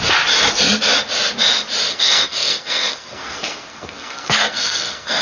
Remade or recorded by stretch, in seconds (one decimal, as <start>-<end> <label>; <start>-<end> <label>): 0.0-1.9 recorded; 1.9-5.2 remade